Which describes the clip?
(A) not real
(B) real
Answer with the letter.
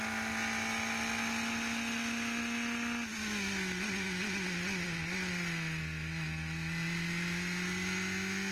B